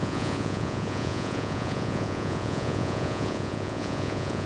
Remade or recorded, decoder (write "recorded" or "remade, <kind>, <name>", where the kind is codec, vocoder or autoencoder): remade, vocoder, Vocos